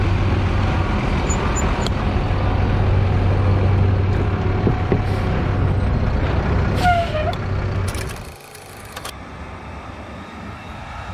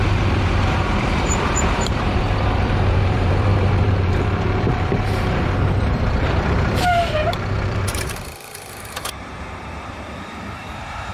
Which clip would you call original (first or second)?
first